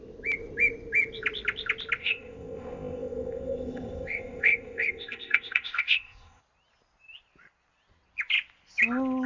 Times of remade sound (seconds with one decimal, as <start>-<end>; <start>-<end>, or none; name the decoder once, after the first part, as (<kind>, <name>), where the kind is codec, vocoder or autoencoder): 2.0-6.4 (codec, ZipCodec)